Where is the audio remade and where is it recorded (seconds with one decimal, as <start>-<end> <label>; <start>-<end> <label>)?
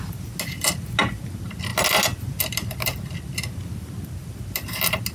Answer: 0.0-5.1 recorded